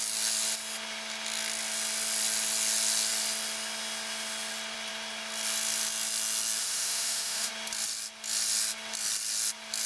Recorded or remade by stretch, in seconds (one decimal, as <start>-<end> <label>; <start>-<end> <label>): 0.0-6.6 recorded; 6.6-7.5 remade; 7.5-9.9 recorded